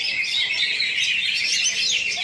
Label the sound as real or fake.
real